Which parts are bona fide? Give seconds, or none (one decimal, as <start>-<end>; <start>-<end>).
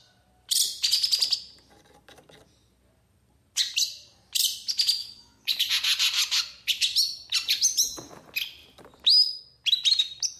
0.0-5.0; 5.7-10.4